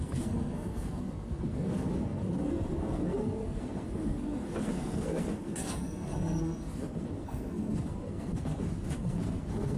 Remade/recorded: remade